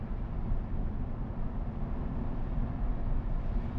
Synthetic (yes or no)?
no